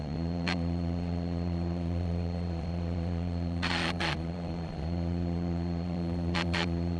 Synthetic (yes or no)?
yes